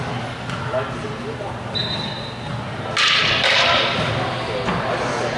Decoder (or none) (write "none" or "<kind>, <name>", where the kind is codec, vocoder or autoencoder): none